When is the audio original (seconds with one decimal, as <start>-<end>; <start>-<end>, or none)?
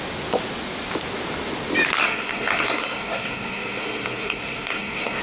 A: 0.0-2.0